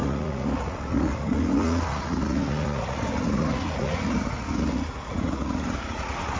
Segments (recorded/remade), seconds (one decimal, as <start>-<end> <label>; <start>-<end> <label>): 0.0-6.4 remade